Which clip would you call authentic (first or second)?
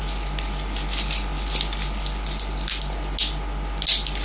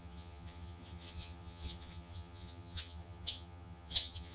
first